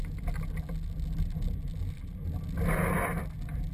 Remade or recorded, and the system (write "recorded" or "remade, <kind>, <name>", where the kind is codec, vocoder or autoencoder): recorded